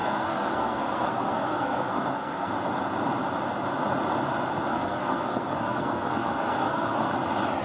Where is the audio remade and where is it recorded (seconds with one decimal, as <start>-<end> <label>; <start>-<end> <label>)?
0.0-2.5 remade; 2.5-4.7 recorded; 4.7-7.1 remade; 7.1-7.6 recorded